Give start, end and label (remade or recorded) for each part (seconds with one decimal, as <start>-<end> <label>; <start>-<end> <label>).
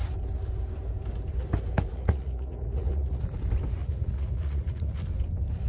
0.0-1.9 recorded; 1.9-3.2 remade; 3.2-3.8 recorded; 3.8-5.1 remade; 5.1-5.7 recorded